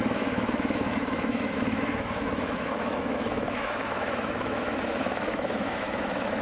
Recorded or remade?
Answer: remade